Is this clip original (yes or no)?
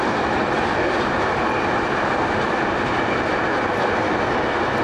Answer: no